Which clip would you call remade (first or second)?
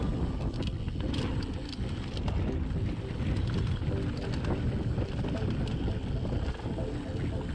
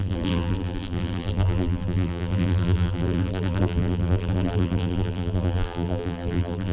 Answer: second